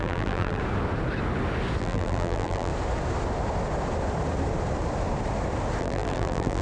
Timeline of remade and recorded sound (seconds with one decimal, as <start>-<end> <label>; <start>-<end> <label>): 0.0-0.6 remade; 0.6-1.8 recorded; 1.8-2.7 remade; 2.7-5.8 recorded; 5.8-6.6 remade